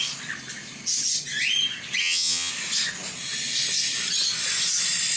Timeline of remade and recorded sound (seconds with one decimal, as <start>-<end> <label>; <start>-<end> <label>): 0.0-2.0 recorded; 2.0-2.5 remade; 2.5-5.2 recorded